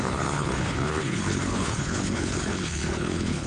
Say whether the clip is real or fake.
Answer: fake